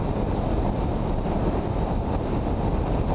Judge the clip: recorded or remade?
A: recorded